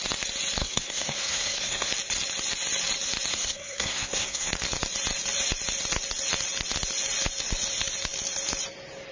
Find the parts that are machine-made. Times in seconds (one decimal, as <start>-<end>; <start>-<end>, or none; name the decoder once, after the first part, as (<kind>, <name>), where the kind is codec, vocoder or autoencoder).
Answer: 0.6-1.9 (codec, SNAC); 3.3-4.5